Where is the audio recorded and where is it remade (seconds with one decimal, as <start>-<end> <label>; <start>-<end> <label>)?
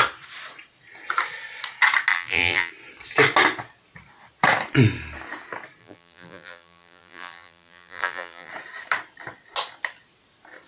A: 0.0-2.1 recorded; 2.1-2.7 remade; 2.7-5.8 recorded; 5.8-8.5 remade; 8.5-10.7 recorded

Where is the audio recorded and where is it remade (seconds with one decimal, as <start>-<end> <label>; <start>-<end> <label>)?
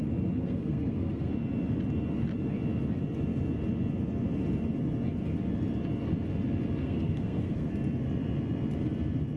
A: 0.0-0.4 recorded; 0.4-1.3 remade; 1.3-6.8 recorded; 6.8-7.7 remade; 7.7-9.4 recorded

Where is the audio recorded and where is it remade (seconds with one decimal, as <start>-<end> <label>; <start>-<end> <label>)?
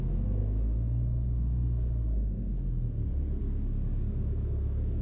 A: 0.0-5.0 remade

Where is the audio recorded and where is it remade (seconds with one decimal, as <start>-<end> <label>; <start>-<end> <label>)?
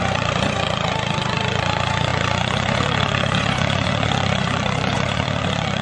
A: 0.0-5.8 remade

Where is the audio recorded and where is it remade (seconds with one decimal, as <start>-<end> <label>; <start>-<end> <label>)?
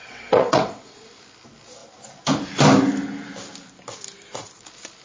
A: 0.0-1.1 remade; 1.1-5.0 recorded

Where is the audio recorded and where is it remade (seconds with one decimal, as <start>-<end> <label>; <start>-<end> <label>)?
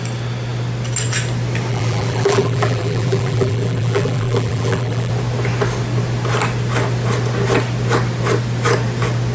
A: 0.0-1.7 recorded; 1.7-5.1 remade; 5.1-9.3 recorded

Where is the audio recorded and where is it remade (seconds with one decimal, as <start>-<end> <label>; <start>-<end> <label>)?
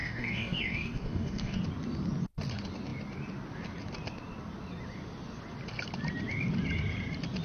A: 0.0-1.6 remade; 1.6-7.4 recorded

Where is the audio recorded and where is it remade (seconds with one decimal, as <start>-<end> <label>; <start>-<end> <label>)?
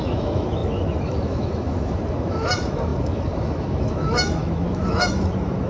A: 0.0-5.7 remade